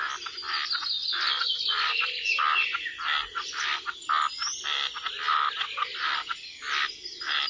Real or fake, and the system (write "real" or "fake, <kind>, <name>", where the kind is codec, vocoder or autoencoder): real